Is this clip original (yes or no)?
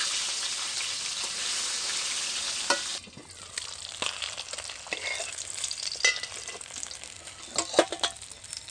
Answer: yes